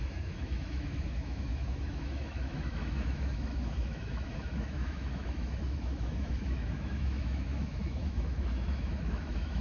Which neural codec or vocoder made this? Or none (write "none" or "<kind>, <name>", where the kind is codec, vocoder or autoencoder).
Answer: autoencoder, DAC-VAE